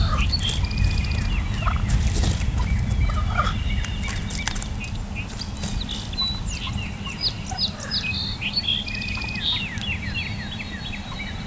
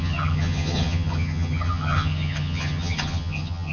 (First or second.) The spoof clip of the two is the second